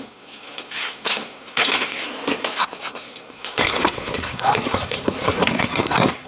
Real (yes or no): no